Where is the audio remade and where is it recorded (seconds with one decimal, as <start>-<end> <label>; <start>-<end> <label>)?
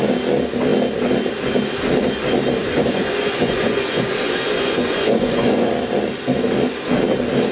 0.0-2.6 recorded; 2.6-5.7 remade; 5.7-7.5 recorded